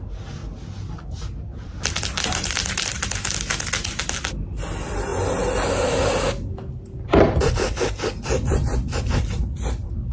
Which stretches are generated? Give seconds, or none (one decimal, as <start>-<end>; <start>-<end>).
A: none